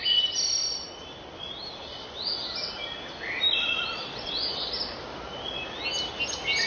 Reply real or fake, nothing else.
real